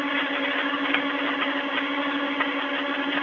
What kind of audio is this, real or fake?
real